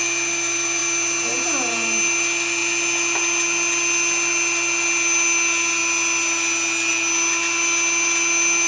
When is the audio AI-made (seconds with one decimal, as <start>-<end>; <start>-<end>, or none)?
none